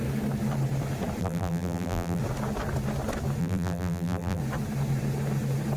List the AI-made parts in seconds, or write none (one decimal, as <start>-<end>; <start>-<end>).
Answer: 1.2-2.2; 3.4-4.4